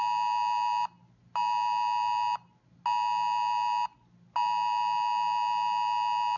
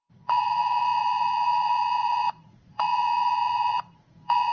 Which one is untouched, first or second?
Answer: first